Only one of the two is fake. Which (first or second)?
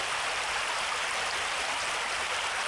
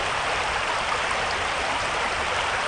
second